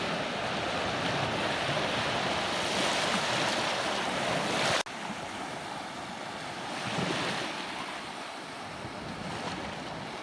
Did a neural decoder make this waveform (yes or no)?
no